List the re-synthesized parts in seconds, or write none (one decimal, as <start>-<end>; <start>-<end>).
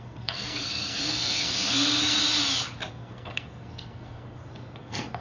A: 0.0-2.2; 2.9-5.2